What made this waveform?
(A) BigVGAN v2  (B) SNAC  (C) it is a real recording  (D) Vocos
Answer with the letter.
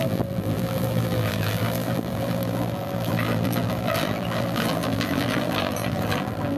A